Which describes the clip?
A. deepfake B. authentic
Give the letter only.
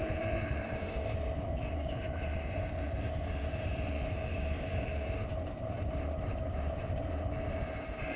A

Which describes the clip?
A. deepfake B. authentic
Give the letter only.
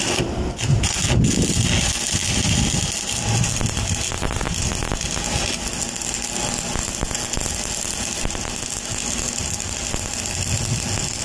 B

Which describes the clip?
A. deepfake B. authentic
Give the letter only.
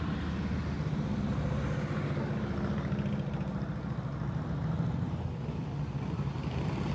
B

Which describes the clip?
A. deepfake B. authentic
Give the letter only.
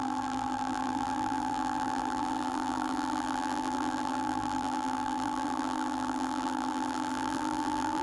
A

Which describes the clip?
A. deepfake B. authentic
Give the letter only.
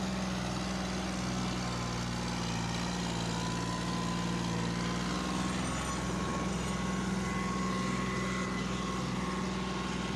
B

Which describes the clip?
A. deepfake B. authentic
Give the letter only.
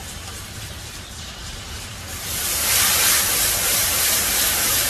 A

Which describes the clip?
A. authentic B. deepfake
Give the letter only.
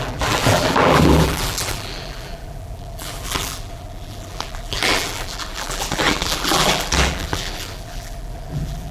B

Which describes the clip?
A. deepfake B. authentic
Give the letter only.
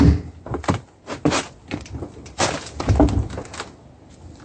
B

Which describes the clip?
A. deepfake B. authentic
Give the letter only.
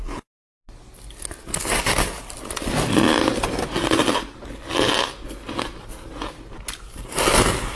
B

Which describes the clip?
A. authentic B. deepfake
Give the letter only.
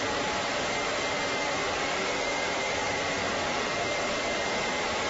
B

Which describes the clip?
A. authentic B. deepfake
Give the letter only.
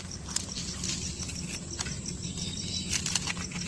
A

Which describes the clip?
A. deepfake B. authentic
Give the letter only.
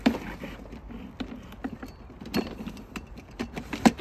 B